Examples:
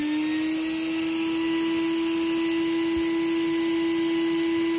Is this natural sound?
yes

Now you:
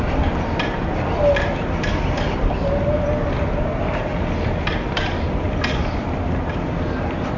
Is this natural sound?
yes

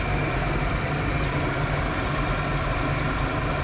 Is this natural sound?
yes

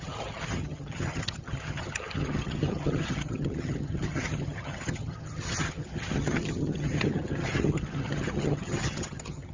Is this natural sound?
no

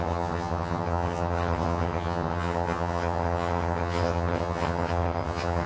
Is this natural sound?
no